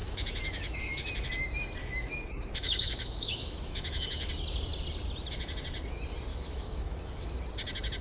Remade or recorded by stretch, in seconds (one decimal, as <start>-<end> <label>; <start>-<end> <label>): 0.0-1.3 remade; 1.3-1.8 recorded; 1.8-4.3 remade; 4.3-6.3 recorded; 6.3-7.5 remade; 7.5-8.0 recorded